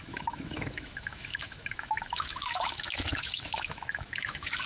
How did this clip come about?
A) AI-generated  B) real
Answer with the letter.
A